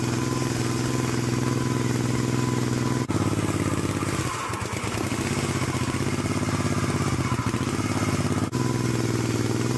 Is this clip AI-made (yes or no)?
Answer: no